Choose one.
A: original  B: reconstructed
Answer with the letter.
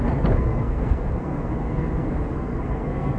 B